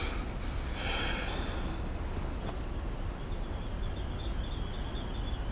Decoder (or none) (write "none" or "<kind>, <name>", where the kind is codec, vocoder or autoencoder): none